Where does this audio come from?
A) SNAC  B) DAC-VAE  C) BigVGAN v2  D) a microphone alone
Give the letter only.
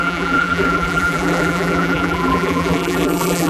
C